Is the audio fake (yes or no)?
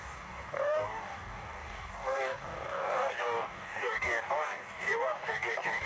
yes